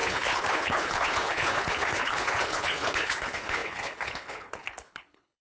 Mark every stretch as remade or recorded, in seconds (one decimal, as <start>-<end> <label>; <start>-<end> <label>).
0.0-5.4 remade